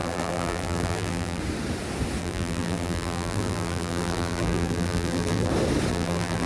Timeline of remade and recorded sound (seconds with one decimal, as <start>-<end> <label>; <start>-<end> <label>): 0.0-1.4 remade; 1.4-2.2 recorded; 2.2-5.5 remade; 5.5-5.9 recorded; 5.9-6.5 remade